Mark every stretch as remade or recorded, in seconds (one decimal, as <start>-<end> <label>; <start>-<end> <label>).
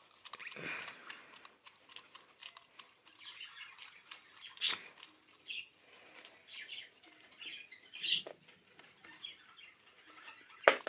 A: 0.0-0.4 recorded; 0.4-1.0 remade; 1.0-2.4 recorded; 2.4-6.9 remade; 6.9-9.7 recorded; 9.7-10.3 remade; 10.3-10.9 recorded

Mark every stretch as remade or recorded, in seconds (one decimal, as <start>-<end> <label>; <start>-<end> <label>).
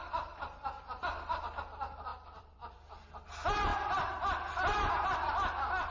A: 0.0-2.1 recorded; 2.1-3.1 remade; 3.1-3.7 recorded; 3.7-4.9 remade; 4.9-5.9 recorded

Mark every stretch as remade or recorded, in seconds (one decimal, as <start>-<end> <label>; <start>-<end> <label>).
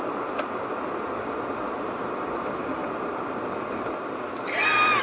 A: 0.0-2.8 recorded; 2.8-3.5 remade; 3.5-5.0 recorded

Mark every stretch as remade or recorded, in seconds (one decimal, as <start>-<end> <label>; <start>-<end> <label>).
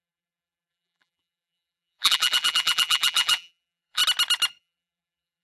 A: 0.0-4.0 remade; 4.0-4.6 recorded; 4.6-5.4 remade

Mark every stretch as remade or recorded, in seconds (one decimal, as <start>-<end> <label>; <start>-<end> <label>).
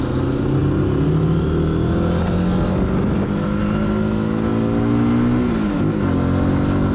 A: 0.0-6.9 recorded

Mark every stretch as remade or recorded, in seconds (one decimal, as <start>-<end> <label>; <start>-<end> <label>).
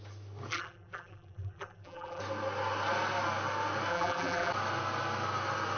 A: 0.0-0.5 recorded; 0.5-2.2 remade; 2.2-3.9 recorded; 3.9-4.5 remade; 4.5-5.8 recorded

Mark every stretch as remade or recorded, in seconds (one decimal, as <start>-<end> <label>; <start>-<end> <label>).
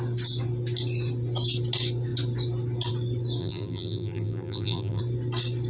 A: 0.0-3.4 recorded; 3.4-5.0 remade; 5.0-5.7 recorded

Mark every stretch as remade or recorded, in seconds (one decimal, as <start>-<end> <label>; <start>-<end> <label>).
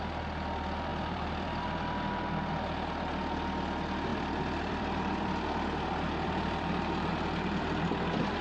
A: 0.0-0.9 recorded; 0.9-2.1 remade; 2.1-4.1 recorded; 4.1-8.4 remade